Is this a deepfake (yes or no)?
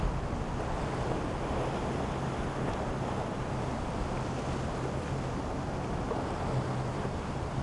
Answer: no